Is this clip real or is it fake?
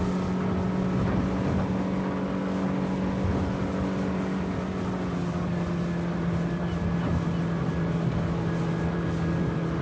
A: real